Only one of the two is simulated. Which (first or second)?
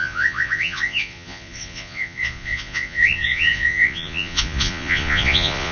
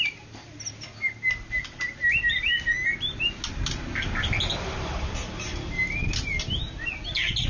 first